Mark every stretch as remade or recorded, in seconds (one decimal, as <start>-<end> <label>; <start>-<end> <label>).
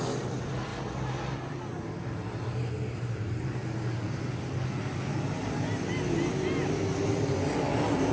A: 0.0-3.6 remade; 3.6-7.1 recorded; 7.1-8.1 remade